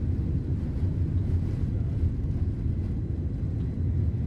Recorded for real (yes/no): yes